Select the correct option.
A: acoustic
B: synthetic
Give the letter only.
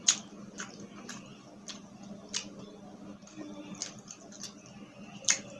A